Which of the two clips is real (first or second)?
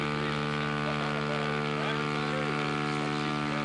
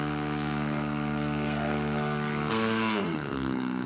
first